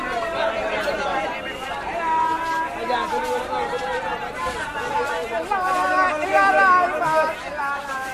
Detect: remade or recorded recorded